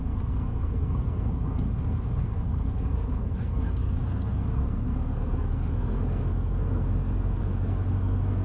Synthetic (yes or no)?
yes